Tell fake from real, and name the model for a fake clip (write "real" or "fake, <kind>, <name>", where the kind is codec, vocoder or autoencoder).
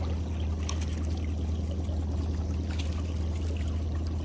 real